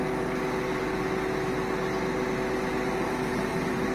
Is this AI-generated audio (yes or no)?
no